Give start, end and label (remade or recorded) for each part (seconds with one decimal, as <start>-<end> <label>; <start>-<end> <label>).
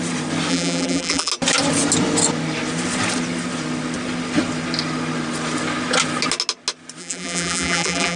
0.0-0.5 recorded; 0.5-1.3 remade; 1.3-7.0 recorded; 7.0-8.2 remade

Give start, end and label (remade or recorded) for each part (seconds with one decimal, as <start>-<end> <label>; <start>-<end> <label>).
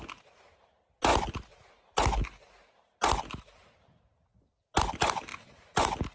0.0-6.1 recorded